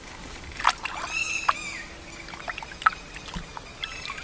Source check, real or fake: real